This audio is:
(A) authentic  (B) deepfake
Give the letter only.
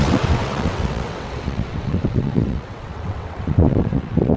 B